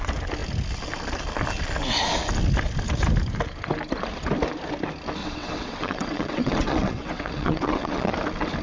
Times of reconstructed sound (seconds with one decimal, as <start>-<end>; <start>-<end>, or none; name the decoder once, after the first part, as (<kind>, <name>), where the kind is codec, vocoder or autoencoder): 5.2-8.1 (vocoder, WaveNeXt)